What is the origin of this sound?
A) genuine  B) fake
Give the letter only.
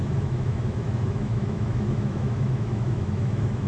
B